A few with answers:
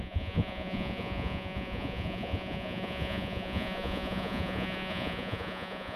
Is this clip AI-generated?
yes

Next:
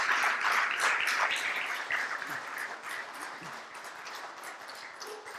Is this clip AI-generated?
no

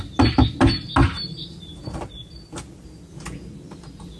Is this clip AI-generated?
no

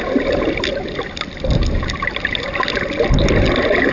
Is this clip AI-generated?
no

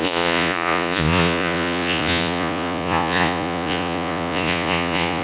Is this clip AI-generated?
yes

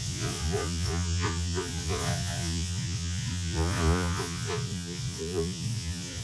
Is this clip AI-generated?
yes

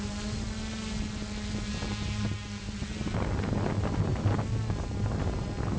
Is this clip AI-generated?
no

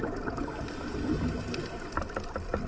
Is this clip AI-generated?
no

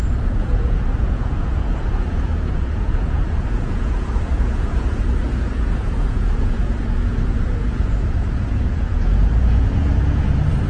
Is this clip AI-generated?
yes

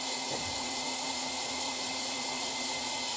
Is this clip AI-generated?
yes